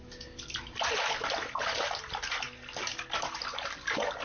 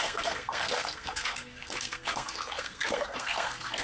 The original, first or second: first